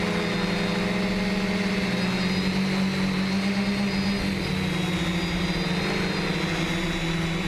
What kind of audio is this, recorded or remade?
recorded